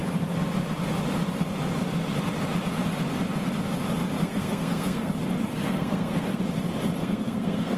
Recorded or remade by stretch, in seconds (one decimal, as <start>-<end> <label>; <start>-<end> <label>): 0.0-4.2 recorded; 4.2-5.1 remade; 5.1-5.5 recorded; 5.5-6.4 remade; 6.4-7.0 recorded; 7.0-7.8 remade